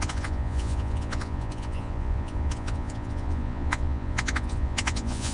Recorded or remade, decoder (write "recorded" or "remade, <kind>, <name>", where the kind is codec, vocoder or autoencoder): remade, vocoder, Vocos